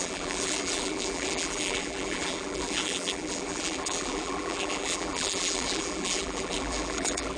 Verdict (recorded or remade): remade